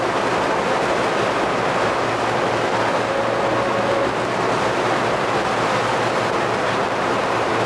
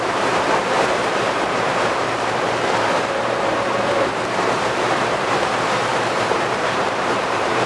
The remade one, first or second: second